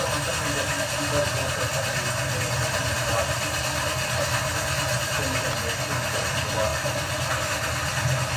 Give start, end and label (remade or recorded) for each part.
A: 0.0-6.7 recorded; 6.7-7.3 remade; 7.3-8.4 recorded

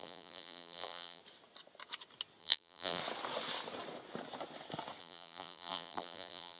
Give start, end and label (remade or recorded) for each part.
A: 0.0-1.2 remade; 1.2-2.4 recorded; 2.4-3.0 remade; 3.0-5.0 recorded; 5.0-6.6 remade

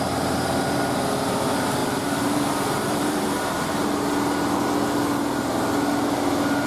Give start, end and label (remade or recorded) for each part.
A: 0.0-1.8 recorded; 1.8-3.8 remade; 3.8-6.7 recorded

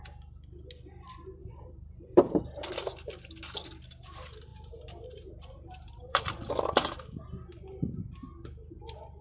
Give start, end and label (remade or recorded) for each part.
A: 0.0-1.4 recorded; 1.4-2.4 remade; 2.4-4.5 recorded; 4.5-6.5 remade; 6.5-9.2 recorded

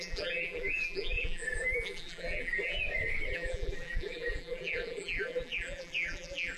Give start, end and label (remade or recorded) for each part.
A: 0.0-2.8 remade; 2.8-3.3 recorded; 3.3-6.6 remade

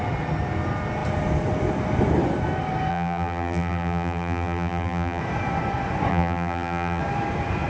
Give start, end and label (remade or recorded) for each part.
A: 0.0-2.9 recorded; 2.9-5.2 remade; 5.2-6.1 recorded; 6.1-7.0 remade; 7.0-7.7 recorded

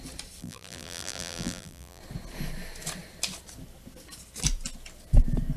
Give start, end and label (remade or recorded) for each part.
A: 0.0-0.4 recorded; 0.4-2.0 remade; 2.0-5.6 recorded

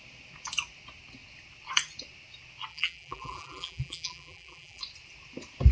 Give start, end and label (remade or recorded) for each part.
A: 0.0-2.7 recorded; 2.7-4.8 remade; 4.8-5.7 recorded